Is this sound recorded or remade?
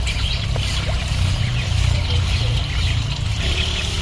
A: recorded